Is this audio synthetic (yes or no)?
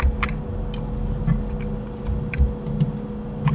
no